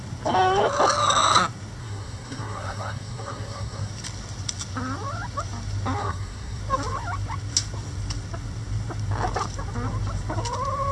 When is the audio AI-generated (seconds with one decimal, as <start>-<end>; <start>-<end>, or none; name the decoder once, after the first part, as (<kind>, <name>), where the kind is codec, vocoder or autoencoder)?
1.8-3.9 (codec, SNAC); 6.0-6.6